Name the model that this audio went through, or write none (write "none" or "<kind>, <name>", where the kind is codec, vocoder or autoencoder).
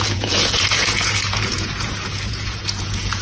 vocoder, Vocos